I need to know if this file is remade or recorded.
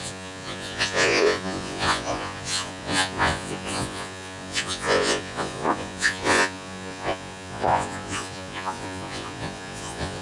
remade